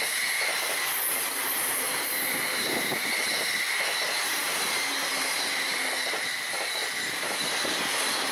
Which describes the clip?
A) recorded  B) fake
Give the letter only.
A